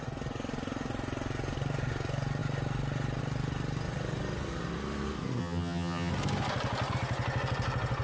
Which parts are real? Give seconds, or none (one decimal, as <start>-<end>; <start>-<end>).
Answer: 0.0-5.4; 6.1-8.0